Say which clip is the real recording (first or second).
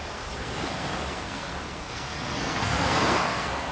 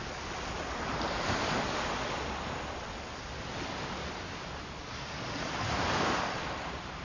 second